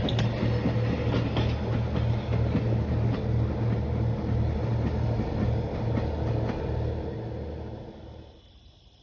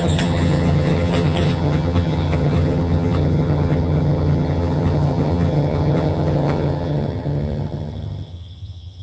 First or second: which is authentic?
first